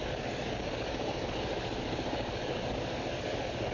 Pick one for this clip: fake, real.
fake